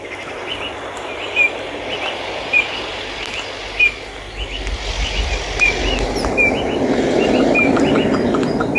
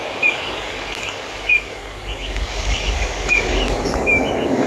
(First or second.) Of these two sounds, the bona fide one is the first